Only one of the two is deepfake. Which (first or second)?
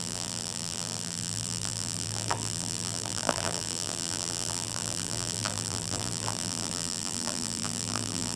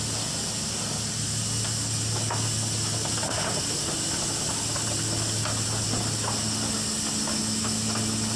first